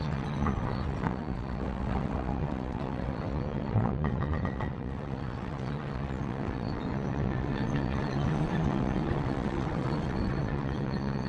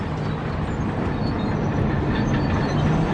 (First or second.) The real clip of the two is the second